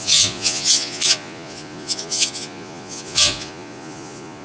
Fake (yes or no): yes